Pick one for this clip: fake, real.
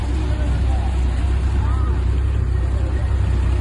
real